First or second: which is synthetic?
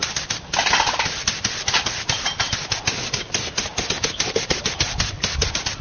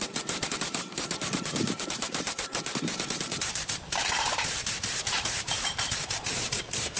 second